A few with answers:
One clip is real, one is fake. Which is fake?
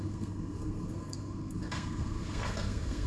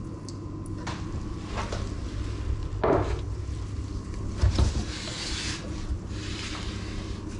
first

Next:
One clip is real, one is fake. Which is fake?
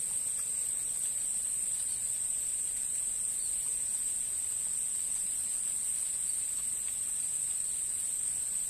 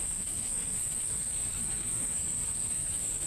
second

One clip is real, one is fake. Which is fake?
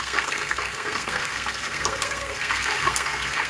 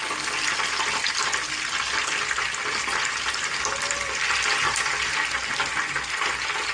first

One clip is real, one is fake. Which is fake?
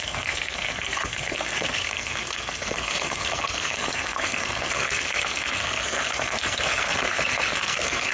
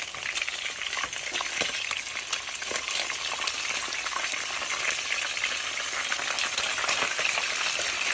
first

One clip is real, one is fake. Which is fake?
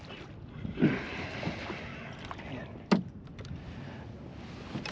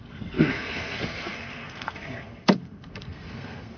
second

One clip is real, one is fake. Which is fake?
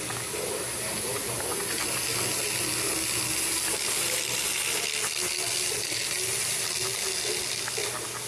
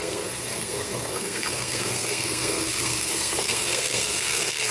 second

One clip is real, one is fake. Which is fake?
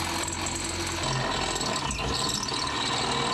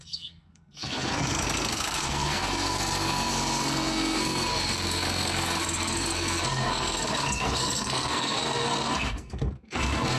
second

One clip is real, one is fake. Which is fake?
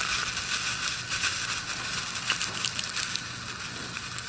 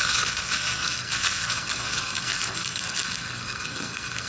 second